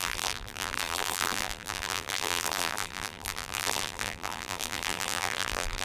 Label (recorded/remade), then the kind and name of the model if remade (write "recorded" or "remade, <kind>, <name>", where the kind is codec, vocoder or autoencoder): remade, vocoder, BigVGAN v2